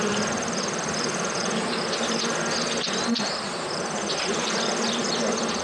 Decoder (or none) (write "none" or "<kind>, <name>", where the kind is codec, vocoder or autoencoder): vocoder, BigVGAN v2